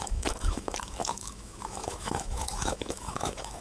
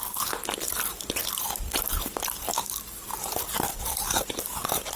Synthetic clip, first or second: first